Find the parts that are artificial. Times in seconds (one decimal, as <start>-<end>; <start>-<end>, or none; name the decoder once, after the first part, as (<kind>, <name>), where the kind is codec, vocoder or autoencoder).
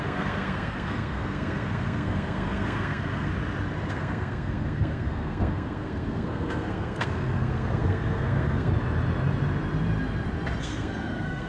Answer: 0.0-3.3 (codec, SNAC); 3.9-8.7; 10.6-11.5